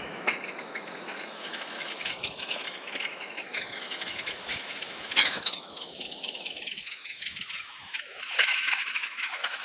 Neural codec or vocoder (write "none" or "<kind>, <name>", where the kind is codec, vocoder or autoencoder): autoencoder, DAC-VAE